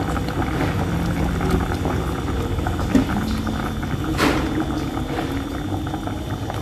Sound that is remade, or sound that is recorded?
recorded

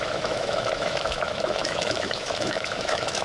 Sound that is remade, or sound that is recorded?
remade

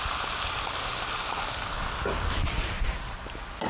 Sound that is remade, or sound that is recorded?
recorded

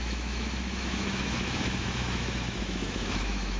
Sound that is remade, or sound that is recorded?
remade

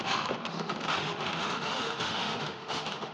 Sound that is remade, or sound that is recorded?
remade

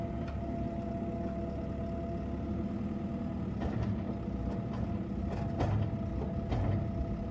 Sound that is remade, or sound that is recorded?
recorded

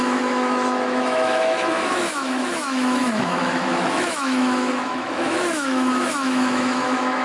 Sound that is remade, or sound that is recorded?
remade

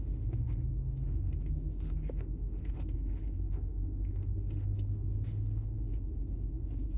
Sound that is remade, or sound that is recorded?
remade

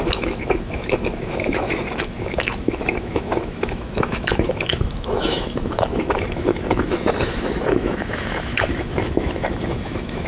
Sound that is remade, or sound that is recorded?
remade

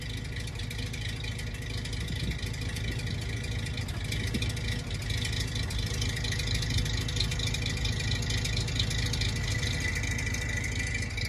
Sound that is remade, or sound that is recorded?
recorded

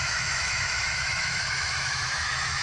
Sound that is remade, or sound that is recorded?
remade